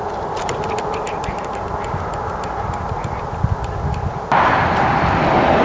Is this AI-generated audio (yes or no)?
no